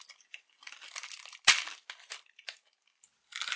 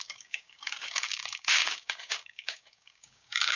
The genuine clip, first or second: first